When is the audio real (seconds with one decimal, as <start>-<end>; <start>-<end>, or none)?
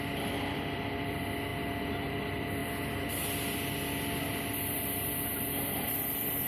0.0-6.5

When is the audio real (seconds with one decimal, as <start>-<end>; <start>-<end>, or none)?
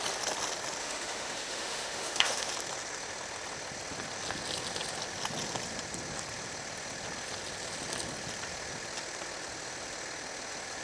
0.0-0.8; 2.5-10.8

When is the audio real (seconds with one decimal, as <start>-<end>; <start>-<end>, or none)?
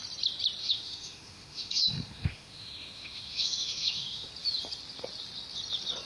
0.0-0.6; 4.3-6.1